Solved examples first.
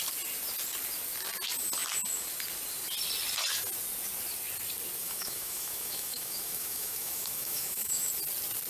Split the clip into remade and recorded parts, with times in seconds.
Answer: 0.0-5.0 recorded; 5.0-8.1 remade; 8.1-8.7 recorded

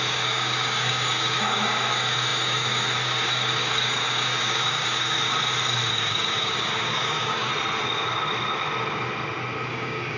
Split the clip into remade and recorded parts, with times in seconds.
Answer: 0.0-5.3 remade; 5.3-5.9 recorded; 5.9-7.5 remade; 7.5-9.7 recorded; 9.7-10.2 remade

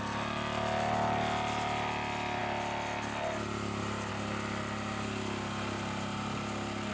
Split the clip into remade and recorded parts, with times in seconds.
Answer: 0.0-6.9 recorded

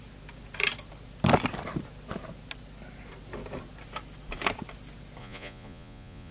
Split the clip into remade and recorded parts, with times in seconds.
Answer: 0.0-5.2 recorded; 5.2-6.3 remade

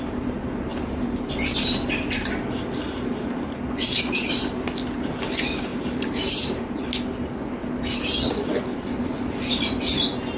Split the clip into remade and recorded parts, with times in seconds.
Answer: 0.0-0.7 recorded; 0.7-1.3 remade; 1.3-5.7 recorded; 5.7-6.8 remade; 6.8-10.4 recorded

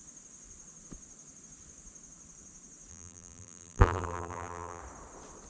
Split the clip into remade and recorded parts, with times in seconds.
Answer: 0.0-2.9 recorded; 2.9-4.8 remade; 4.8-5.5 recorded